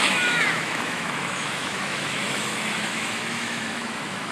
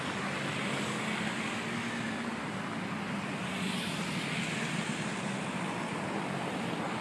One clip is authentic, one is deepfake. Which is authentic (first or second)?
second